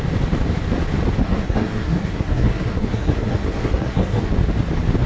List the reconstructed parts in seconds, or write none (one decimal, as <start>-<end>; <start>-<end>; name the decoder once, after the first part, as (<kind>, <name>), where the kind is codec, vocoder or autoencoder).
1.2-4.3 (codec, SNAC)